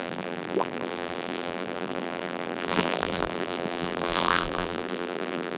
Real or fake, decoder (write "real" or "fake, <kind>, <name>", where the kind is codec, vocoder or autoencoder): fake, vocoder, BigVGAN v2